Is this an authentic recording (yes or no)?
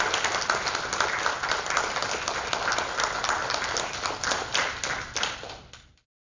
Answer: yes